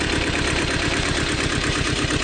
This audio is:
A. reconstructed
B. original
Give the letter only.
A